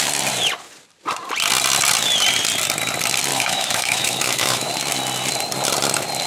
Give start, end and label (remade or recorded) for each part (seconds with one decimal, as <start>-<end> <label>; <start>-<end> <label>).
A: 0.0-3.3 recorded; 3.3-4.7 remade; 4.7-6.3 recorded